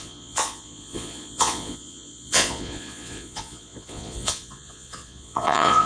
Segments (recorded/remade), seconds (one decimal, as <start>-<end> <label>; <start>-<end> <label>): 0.0-5.9 remade